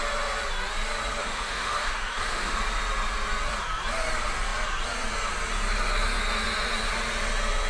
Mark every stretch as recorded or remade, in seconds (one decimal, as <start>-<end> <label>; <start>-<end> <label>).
0.0-1.2 recorded; 1.2-2.6 remade; 2.6-7.7 recorded